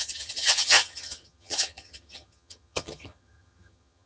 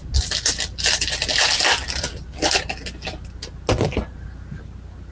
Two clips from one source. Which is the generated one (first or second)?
first